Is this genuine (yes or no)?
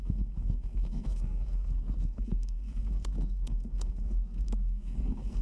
no